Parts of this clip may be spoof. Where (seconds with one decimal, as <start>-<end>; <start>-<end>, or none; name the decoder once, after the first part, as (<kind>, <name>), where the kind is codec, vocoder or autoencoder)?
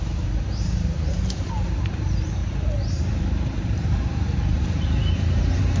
0.0-2.4 (vocoder, BigVGAN v2); 3.0-5.8